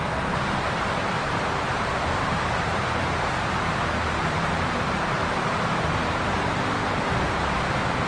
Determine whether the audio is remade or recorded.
remade